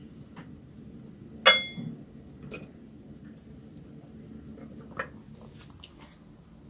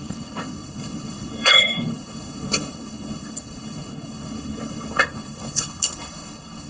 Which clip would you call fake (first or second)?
second